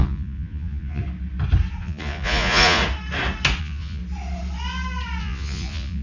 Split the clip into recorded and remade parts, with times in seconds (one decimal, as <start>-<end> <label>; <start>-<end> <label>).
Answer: 0.0-1.0 remade; 1.0-1.8 recorded; 1.8-2.8 remade; 2.8-3.6 recorded; 3.6-4.0 remade; 4.0-5.2 recorded; 5.2-6.0 remade